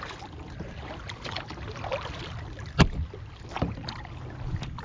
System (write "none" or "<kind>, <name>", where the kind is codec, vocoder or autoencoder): none